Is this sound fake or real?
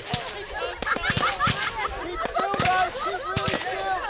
real